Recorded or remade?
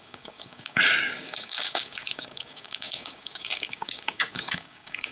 remade